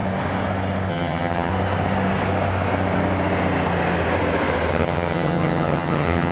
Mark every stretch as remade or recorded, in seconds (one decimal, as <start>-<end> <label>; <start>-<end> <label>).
0.0-0.9 recorded; 0.9-1.5 remade; 1.5-4.7 recorded; 4.7-6.3 remade